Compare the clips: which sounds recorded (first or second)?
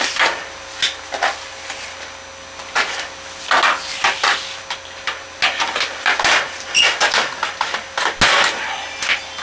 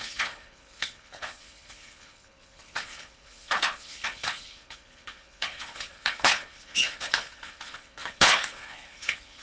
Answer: first